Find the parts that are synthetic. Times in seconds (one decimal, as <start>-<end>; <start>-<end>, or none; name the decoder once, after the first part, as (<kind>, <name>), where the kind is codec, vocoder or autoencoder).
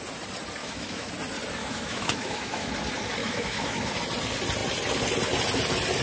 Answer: 0.6-1.1 (autoencoder, DAC-VAE); 1.6-2.7; 3.2-3.9